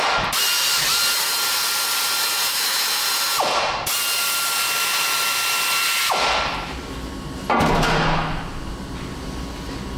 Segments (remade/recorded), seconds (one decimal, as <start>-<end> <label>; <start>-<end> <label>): 0.0-2.5 recorded; 2.5-3.0 remade; 3.0-10.0 recorded